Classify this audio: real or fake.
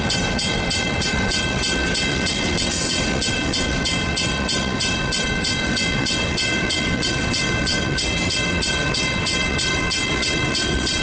fake